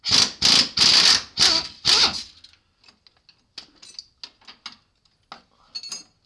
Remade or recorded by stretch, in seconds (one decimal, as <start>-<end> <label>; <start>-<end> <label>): 0.0-6.3 recorded